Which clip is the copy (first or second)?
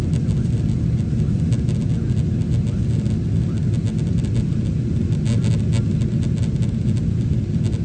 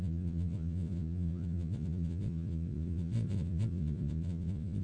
second